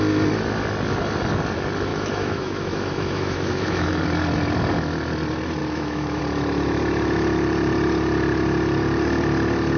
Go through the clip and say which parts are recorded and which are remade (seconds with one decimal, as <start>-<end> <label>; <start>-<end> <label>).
0.0-1.9 recorded; 1.9-4.0 remade; 4.0-5.6 recorded; 5.6-6.2 remade; 6.2-9.8 recorded